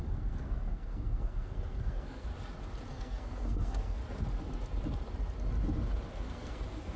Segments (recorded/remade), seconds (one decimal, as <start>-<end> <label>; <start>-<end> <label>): 0.0-2.3 remade; 2.3-2.9 recorded; 2.9-4.0 remade; 4.0-6.1 recorded; 6.1-7.0 remade